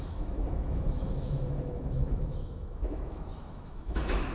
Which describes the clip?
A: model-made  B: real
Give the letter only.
A